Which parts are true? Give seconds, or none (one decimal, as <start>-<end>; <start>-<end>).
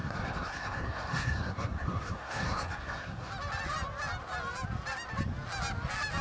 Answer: 3.3-6.2